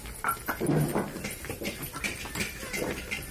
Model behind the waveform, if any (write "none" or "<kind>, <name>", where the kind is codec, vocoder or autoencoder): none